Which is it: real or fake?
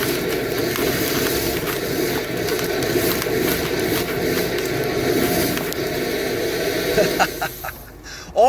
real